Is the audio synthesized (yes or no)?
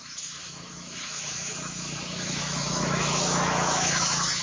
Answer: yes